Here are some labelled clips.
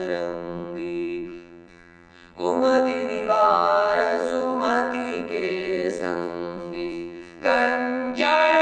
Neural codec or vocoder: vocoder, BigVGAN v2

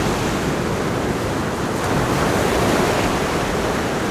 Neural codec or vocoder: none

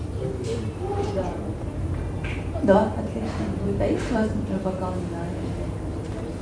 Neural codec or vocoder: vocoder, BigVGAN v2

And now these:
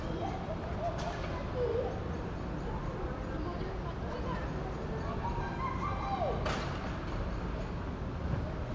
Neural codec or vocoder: none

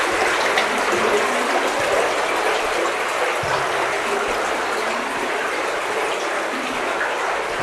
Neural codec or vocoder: none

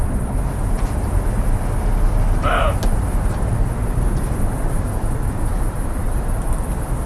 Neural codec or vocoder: vocoder, BigVGAN v2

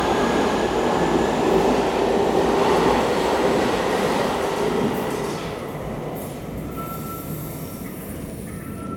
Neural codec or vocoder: none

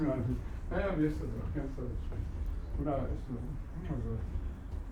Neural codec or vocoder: vocoder, BigVGAN v2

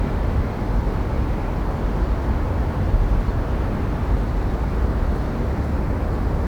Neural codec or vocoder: none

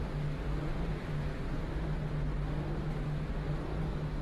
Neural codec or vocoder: none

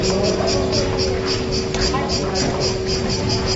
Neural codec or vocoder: none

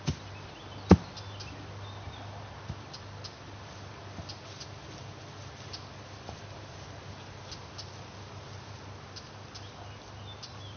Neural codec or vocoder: none